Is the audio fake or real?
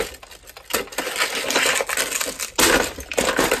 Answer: real